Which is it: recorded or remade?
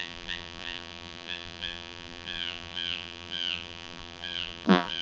remade